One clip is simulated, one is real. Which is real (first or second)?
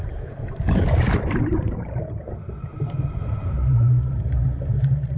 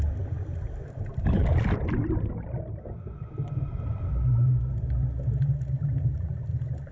second